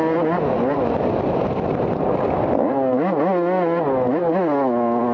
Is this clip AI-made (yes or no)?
no